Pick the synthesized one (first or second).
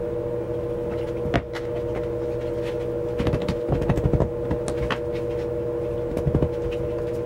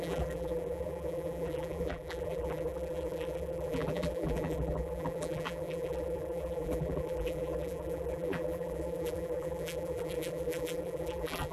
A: second